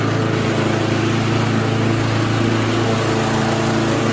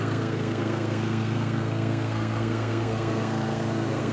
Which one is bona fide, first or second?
first